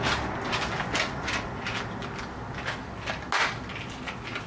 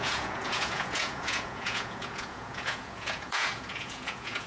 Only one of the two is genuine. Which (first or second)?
first